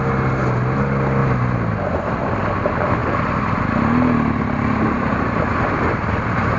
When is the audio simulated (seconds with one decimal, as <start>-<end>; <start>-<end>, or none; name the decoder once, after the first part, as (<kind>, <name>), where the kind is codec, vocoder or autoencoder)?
none